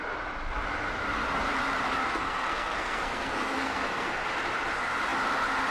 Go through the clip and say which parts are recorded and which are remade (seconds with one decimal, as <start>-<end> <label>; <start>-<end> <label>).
0.0-2.0 recorded; 2.0-4.2 remade; 4.2-5.7 recorded